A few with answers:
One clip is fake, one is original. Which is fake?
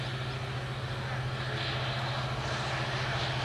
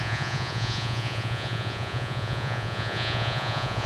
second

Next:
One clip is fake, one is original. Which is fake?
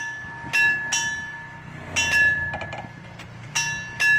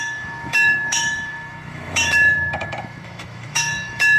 second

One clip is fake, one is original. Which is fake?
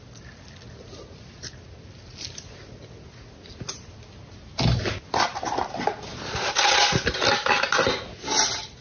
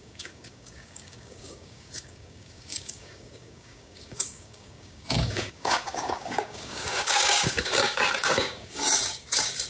second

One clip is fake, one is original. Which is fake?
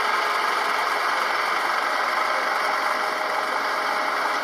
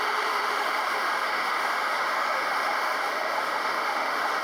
second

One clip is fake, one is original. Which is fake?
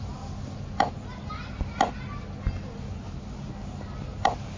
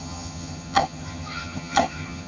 second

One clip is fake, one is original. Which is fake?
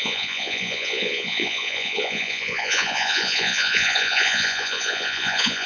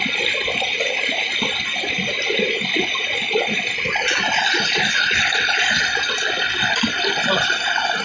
first